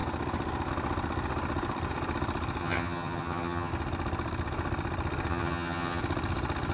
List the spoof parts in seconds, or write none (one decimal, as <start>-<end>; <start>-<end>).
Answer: 2.6-3.7; 5.3-6.0